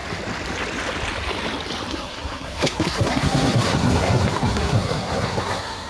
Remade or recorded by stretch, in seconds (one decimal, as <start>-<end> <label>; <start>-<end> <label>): 0.0-1.9 recorded; 1.9-5.9 remade